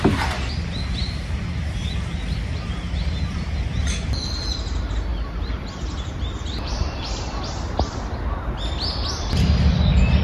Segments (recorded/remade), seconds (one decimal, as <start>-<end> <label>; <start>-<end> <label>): 0.0-5.1 recorded; 5.1-9.3 remade; 9.3-10.2 recorded